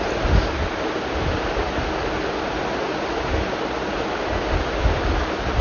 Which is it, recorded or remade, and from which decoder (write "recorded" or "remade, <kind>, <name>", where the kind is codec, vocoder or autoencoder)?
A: recorded